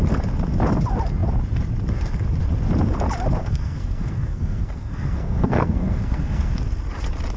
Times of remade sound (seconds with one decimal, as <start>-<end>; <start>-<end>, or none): 3.4-6.5

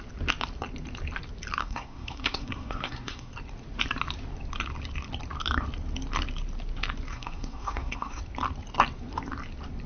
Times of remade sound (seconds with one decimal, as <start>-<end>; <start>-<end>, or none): 1.6-3.3; 7.1-8.2

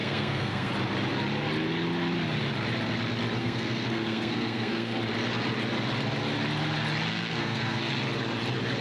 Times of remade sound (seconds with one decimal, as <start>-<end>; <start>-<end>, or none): 0.0-0.7; 3.4-5.0; 7.1-7.9

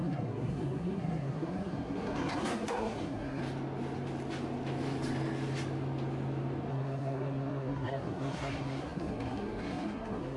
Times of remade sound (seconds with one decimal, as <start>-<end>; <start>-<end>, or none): 0.0-3.4; 6.7-10.4

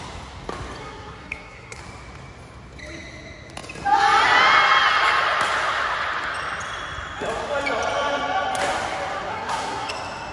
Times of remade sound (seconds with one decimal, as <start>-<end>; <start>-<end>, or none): 0.8-1.8; 9.3-9.9